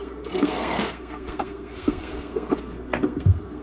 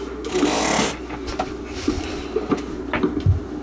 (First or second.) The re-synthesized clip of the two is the first